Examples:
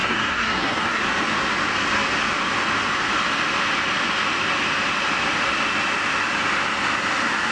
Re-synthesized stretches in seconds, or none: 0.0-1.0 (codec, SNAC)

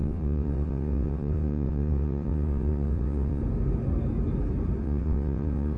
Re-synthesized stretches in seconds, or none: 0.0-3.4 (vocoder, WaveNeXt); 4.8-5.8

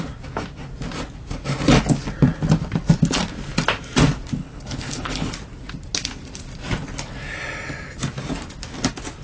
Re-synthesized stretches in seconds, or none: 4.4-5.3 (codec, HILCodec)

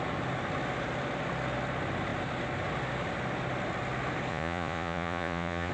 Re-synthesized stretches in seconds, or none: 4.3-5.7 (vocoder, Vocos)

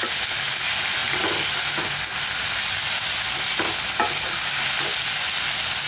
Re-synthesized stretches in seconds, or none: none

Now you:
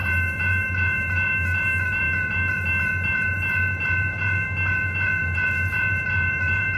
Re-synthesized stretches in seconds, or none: 0.0-6.8 (vocoder, BigVGAN v2)